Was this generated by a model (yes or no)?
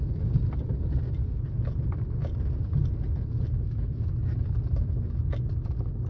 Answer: no